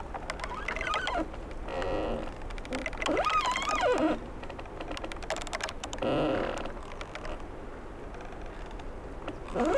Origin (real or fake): real